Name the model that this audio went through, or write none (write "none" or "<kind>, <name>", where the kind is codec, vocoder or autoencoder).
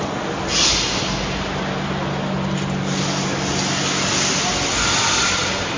none